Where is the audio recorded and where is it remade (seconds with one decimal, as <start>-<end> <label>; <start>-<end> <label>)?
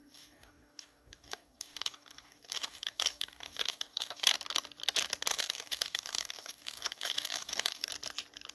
0.0-4.3 remade; 4.3-5.3 recorded; 5.3-7.9 remade; 7.9-8.5 recorded